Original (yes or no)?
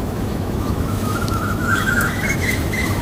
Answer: no